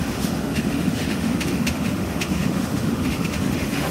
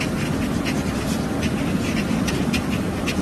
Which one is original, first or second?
second